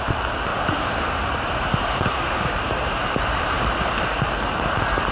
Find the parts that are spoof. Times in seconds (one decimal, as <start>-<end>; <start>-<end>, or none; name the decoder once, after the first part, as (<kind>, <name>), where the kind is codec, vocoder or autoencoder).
0.5-3.6 (vocoder, BigVGAN v2)